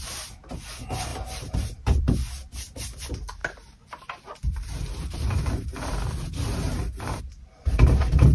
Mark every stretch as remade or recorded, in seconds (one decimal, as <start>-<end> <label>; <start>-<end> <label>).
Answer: 0.0-1.1 recorded; 1.1-2.0 remade; 2.0-3.4 recorded; 3.4-7.2 remade; 7.2-8.3 recorded